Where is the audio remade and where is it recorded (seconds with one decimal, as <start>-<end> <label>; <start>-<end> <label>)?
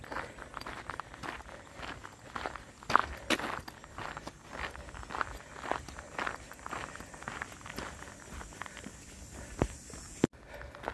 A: 0.0-10.9 recorded